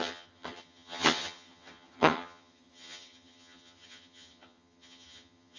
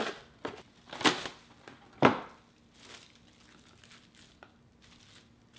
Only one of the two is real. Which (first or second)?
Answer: second